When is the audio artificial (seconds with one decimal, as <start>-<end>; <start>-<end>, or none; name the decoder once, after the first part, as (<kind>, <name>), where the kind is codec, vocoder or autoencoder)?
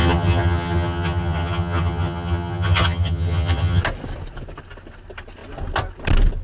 0.0-3.8 (vocoder, HiFi-GAN)